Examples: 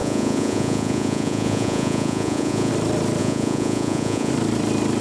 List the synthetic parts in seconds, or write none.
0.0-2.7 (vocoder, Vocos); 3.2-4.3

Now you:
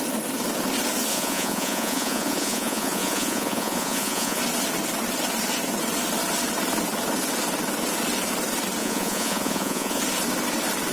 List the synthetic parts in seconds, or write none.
1.1-4.4 (vocoder, Vocos); 8.8-10.0

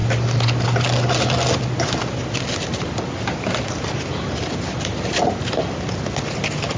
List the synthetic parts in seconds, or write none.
none

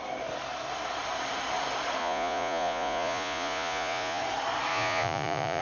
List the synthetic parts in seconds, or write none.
2.0-4.2 (vocoder, Vocos); 4.7-5.6

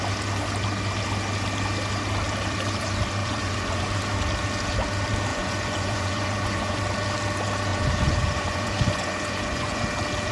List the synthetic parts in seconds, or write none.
3.2-3.9 (vocoder, Vocos); 5.3-6.8; 7.7-9.8

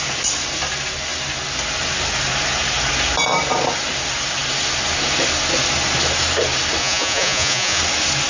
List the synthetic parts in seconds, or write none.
6.8-7.8 (vocoder, Vocos)

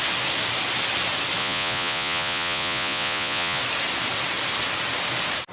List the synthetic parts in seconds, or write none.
1.4-3.6 (vocoder, Vocos)